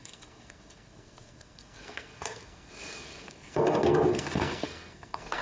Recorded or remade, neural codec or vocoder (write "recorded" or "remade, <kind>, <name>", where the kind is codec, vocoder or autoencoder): remade, codec, SNAC